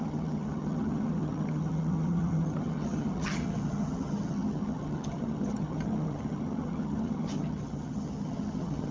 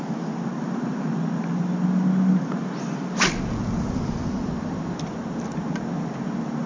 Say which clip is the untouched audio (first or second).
second